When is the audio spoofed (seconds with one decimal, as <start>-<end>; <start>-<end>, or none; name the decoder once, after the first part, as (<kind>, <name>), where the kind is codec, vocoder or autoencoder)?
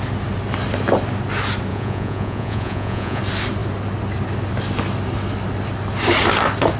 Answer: 1.7-3.2 (vocoder, Vocos)